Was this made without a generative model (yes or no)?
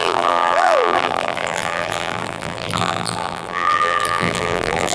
no